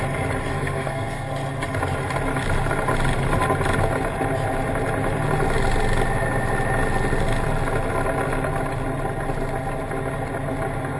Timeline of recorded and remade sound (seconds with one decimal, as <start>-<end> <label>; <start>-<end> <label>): 0.0-0.5 recorded; 0.5-1.3 remade; 1.3-11.0 recorded